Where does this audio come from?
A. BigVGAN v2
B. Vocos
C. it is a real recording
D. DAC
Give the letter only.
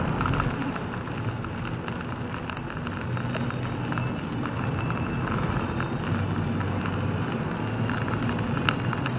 C